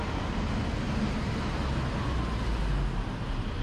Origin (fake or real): real